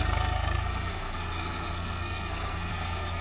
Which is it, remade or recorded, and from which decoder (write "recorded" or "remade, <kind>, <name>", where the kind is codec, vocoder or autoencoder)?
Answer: remade, codec, SNAC